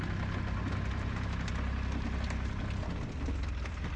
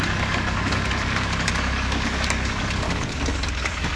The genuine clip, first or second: first